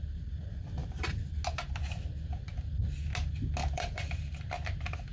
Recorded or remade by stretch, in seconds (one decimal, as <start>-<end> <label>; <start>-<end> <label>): 0.0-0.8 recorded; 0.8-1.3 remade; 1.3-3.6 recorded; 3.6-4.4 remade; 4.4-5.1 recorded